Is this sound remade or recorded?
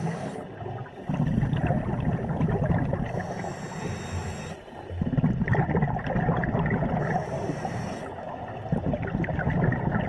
recorded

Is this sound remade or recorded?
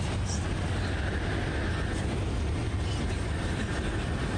recorded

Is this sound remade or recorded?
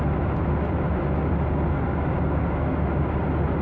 recorded